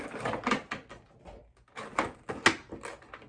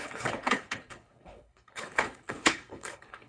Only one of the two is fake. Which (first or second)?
second